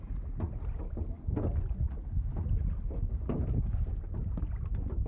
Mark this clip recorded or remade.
recorded